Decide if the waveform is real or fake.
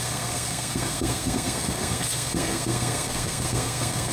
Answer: fake